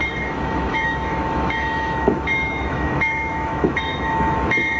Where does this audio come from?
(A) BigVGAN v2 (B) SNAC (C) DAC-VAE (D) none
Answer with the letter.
C